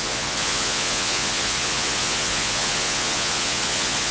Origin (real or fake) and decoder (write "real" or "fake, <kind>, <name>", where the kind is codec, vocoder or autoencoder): fake, vocoder, Vocos